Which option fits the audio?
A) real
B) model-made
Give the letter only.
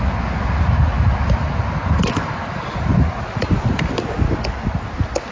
A